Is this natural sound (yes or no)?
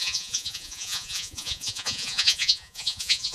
no